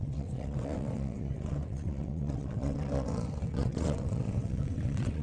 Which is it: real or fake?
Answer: fake